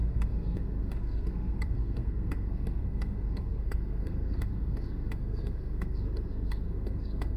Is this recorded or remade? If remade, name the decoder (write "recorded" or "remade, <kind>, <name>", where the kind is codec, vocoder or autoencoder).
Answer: remade, codec, SNAC